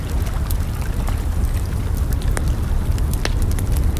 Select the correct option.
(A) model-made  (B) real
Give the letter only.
B